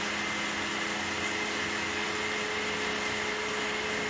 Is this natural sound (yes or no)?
yes